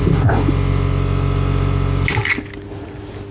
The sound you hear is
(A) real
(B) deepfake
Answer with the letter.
A